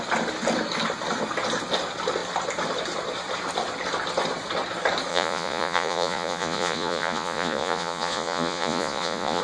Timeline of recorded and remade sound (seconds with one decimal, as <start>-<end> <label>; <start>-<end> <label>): 0.0-5.1 recorded; 5.1-9.4 remade

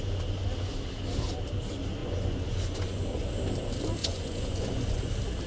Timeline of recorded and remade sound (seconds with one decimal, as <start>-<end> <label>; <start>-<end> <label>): 0.0-2.0 recorded; 2.0-3.3 remade; 3.3-4.0 recorded; 4.0-5.1 remade; 5.1-5.5 recorded

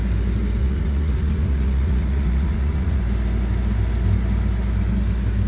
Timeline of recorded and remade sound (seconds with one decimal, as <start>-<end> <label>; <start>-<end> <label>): 0.0-0.6 recorded; 0.6-3.0 remade; 3.0-5.5 recorded

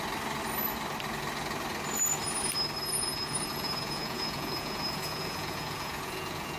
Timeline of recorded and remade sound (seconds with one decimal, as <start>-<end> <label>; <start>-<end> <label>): 0.0-2.9 recorded; 2.9-6.6 remade

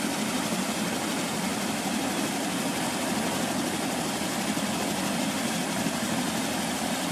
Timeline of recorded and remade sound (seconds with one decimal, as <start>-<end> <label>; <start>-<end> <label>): 0.0-7.1 recorded

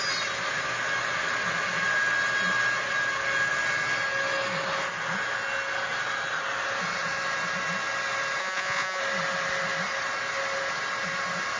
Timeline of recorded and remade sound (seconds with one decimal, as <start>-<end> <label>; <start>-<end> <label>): 0.0-8.4 recorded; 8.4-9.0 remade; 9.0-11.6 recorded